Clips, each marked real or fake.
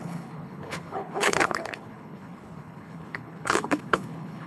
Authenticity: fake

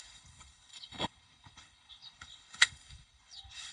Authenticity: fake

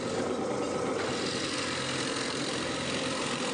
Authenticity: real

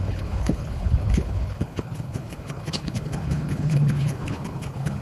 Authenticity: fake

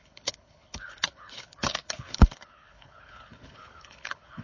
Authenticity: fake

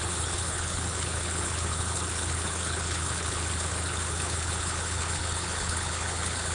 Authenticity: fake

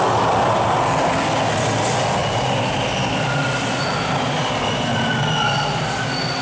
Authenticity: real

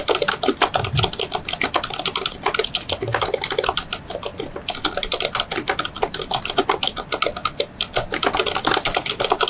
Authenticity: real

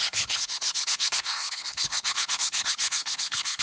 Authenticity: fake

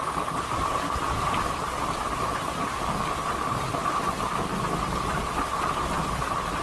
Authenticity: real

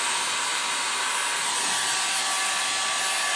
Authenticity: real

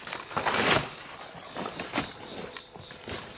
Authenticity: real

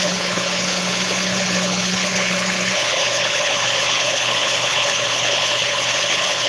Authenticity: fake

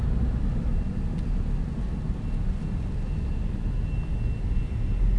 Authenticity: real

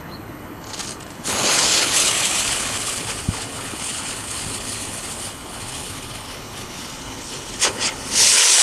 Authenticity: fake